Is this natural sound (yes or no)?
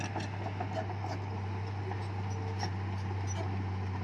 yes